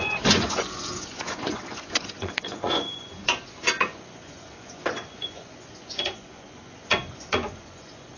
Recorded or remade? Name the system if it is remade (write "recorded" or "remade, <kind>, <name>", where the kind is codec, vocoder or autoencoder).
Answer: remade, vocoder, Vocos